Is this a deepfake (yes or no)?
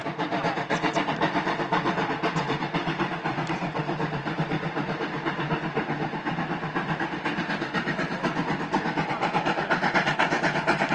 yes